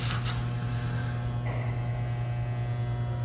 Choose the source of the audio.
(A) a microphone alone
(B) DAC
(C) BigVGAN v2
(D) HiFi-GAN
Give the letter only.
A